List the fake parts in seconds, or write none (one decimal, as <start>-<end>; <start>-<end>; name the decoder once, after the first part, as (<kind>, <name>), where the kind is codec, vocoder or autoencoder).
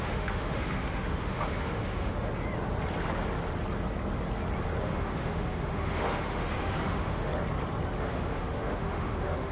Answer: 0.0-2.3 (autoencoder, DAC-VAE); 4.8-7.3; 8.0-9.5